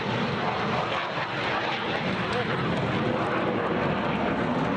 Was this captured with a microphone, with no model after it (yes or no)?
yes